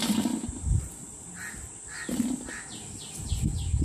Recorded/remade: recorded